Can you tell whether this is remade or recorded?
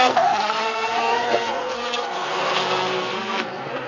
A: remade